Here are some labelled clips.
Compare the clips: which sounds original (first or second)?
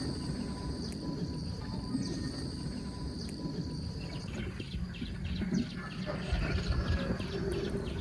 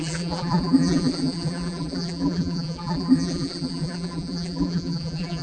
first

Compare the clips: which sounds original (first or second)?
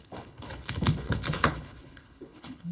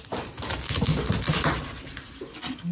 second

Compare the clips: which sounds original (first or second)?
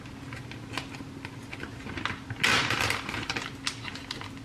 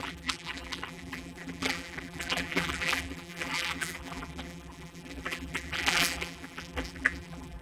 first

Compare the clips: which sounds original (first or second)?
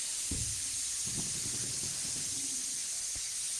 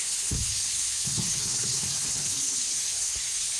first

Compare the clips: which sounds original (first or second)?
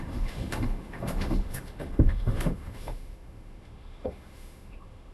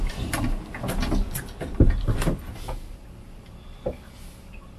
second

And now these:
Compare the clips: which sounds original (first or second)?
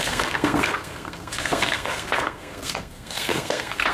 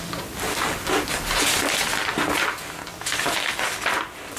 second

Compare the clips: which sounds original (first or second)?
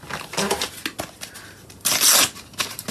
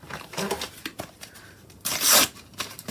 first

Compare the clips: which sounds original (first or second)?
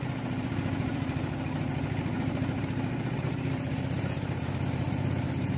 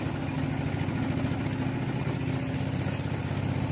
second